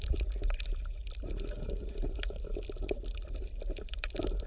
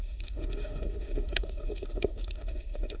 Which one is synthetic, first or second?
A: second